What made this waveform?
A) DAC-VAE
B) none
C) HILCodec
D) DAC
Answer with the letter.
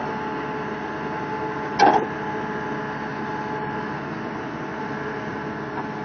B